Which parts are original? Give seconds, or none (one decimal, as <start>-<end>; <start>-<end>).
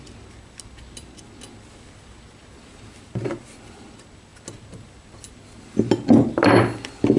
0.0-7.2